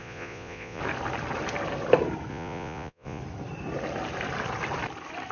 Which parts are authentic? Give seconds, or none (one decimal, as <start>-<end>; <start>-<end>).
0.8-2.3; 3.2-5.3